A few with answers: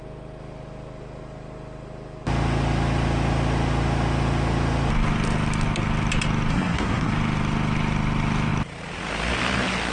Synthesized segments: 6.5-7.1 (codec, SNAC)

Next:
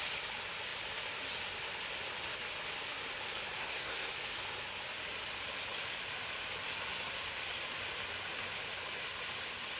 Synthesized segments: 3.6-4.1 (codec, SNAC)